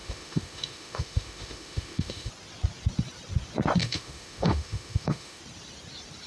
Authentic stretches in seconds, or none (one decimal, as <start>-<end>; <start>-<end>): 2.3-3.8; 5.4-6.3